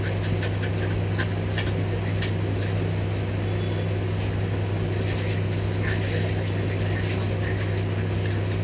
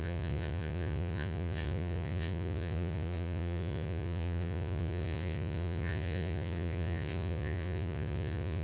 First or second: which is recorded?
first